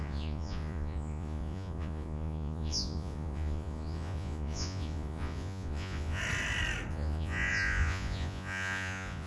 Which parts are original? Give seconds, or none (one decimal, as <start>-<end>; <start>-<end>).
6.2-6.9